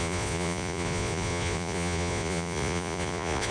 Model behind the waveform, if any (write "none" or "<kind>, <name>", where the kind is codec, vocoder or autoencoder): vocoder, Vocos